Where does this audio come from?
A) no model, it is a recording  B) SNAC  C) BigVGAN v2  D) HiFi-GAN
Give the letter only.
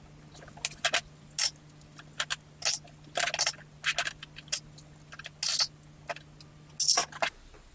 A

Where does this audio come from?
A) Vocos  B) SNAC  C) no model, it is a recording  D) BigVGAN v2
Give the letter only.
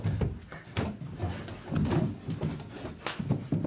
C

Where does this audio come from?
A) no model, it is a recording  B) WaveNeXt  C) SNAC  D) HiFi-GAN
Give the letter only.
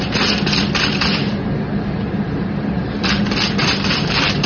A